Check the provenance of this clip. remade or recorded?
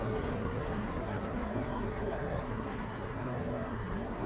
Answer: remade